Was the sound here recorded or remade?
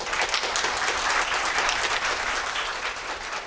recorded